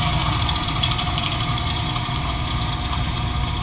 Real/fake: fake